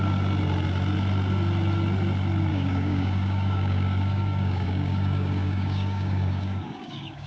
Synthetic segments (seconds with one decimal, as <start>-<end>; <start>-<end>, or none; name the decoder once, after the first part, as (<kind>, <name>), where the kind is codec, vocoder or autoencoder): 2.5-7.3 (codec, DAC)